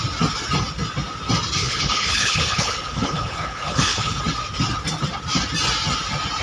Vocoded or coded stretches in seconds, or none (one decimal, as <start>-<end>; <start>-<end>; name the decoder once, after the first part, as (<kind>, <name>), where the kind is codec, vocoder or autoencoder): 1.6-4.2 (codec, HILCodec)